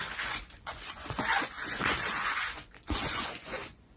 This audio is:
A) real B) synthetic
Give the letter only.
B